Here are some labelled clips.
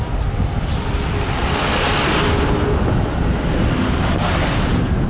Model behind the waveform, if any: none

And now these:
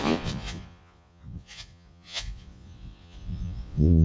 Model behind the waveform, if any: vocoder, Vocos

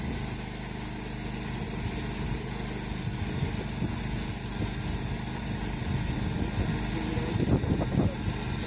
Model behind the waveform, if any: none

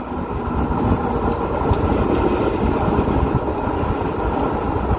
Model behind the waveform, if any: none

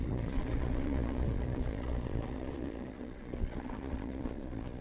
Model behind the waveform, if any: vocoder, Vocos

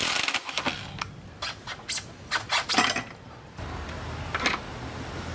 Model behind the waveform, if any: none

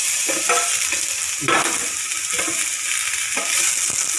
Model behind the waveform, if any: none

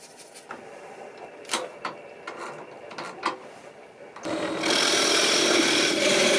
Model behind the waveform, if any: none